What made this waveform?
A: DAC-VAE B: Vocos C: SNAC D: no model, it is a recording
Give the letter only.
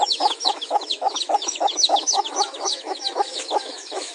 A